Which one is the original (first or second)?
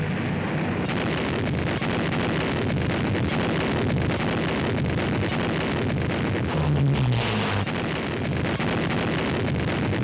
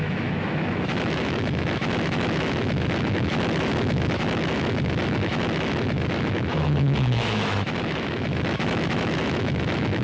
first